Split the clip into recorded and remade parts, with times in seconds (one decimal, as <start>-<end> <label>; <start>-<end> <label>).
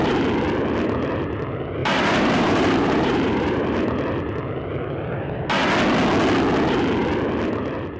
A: 0.0-1.8 recorded; 1.8-3.9 remade; 3.9-8.0 recorded